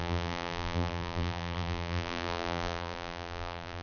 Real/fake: fake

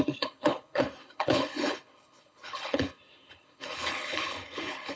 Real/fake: fake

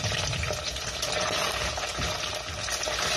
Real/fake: real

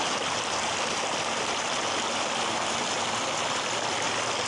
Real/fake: real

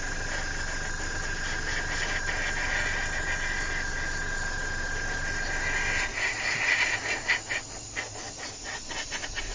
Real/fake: real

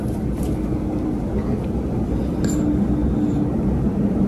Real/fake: real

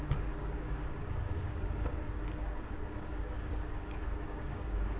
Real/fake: fake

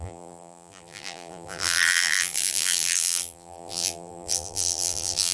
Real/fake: fake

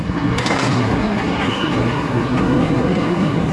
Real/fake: fake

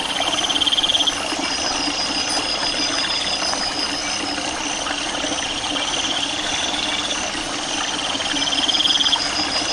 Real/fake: real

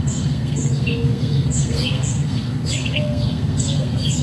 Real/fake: fake